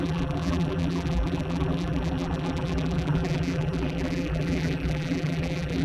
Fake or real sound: fake